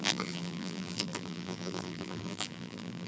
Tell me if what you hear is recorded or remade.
remade